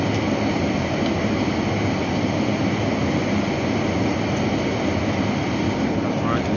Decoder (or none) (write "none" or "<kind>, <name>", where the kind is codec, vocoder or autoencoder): none